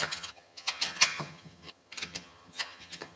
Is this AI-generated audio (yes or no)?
yes